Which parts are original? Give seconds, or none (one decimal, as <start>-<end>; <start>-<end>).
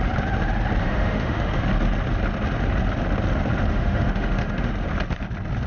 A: 0.0-0.8; 1.6-3.7; 4.7-5.7